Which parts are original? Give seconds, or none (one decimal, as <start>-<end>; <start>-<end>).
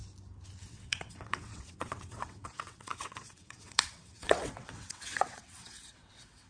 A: 0.0-0.7